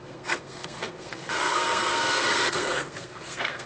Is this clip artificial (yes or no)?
yes